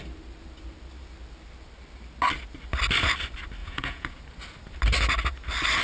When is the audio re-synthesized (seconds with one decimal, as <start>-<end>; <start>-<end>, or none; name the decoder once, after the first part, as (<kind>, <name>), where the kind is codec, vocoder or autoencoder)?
3.6-4.2 (vocoder, Vocos)